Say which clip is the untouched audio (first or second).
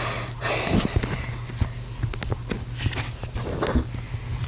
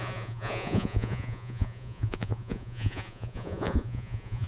first